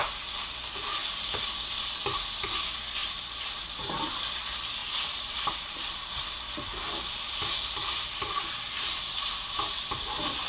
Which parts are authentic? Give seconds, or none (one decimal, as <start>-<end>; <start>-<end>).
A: 0.0-1.0; 1.5-3.0; 4.2-4.8; 6.3-6.7; 9.1-10.5